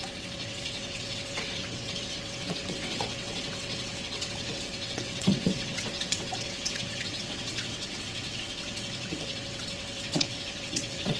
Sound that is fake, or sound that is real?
fake